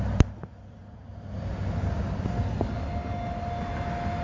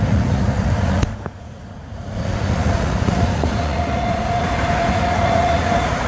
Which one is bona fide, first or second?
first